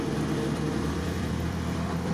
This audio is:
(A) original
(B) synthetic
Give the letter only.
B